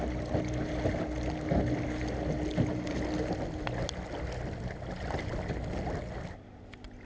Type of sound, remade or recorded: recorded